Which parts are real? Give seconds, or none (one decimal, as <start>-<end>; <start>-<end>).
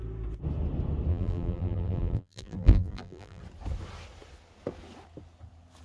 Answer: 0.0-1.1; 3.4-5.8